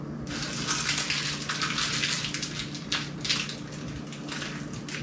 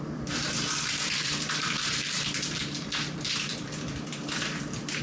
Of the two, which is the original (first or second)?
first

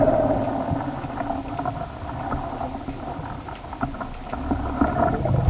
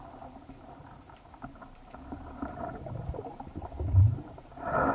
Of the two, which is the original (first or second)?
first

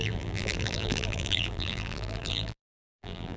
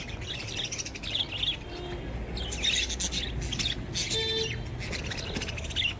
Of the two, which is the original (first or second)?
second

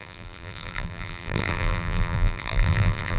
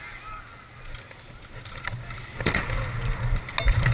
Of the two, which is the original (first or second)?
second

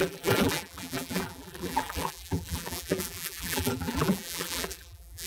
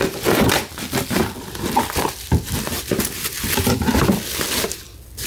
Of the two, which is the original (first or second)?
second